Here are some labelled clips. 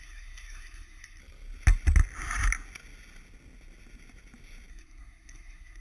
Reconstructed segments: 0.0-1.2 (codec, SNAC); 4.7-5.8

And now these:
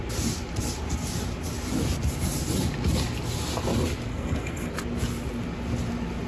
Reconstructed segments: 4.1-4.7 (codec, SNAC)

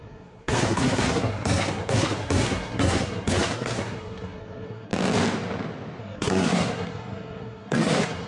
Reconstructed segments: 0.0-4.9 (codec, SNAC); 6.0-8.3